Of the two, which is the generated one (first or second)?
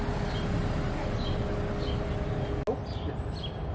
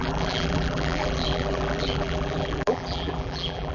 second